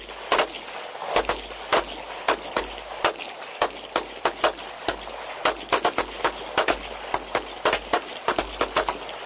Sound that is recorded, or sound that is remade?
recorded